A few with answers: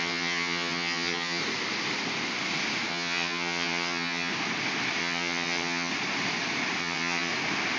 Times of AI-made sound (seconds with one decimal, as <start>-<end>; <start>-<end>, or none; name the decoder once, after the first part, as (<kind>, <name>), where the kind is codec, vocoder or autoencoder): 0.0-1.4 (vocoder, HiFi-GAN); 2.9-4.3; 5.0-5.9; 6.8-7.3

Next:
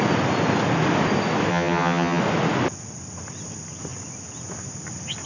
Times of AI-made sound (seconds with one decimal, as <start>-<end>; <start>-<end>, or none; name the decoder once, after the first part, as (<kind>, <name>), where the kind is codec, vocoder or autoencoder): 1.5-2.2 (vocoder, HiFi-GAN)

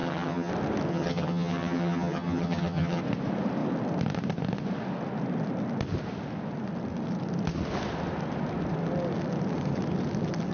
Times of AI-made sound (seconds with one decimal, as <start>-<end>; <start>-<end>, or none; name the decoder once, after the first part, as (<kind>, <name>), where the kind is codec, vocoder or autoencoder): 0.0-0.5 (vocoder, HiFi-GAN); 0.9-3.0